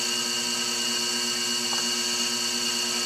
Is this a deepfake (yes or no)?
no